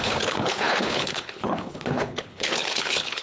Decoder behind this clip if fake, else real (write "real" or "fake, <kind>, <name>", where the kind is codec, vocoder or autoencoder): fake, codec, HILCodec